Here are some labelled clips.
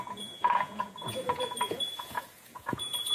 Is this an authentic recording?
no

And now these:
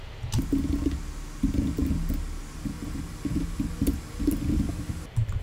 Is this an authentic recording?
yes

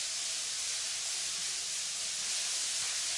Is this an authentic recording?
yes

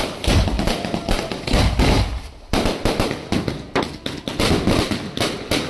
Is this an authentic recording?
yes